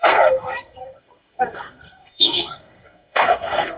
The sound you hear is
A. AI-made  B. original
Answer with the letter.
A